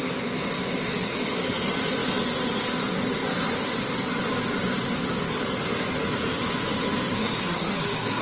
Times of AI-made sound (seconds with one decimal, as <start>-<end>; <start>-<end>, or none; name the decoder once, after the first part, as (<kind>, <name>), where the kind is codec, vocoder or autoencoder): 7.1-8.2 (codec, SNAC)